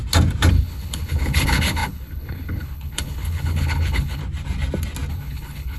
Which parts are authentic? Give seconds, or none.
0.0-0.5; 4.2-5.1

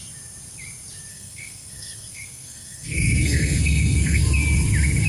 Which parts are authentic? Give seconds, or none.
0.0-1.1; 4.2-5.1

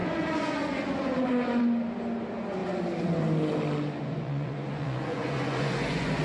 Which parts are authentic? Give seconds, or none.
1.6-4.0

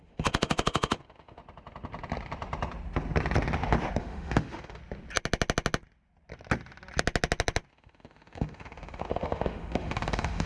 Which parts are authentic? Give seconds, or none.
1.4-4.0; 4.8-7.7

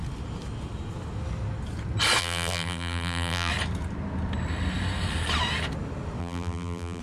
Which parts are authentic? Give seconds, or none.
0.0-2.2; 3.5-6.2

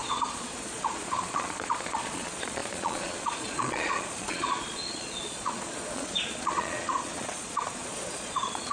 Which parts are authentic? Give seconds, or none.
none